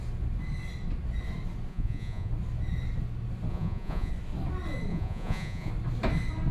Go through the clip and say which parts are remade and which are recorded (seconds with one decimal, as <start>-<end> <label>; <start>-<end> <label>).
0.0-1.7 recorded; 1.7-2.3 remade; 2.3-3.5 recorded; 3.5-4.1 remade; 4.1-4.9 recorded; 4.9-5.7 remade; 5.7-6.5 recorded